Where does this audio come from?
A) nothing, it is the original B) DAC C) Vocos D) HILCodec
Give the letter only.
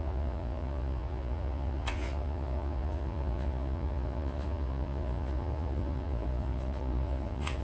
C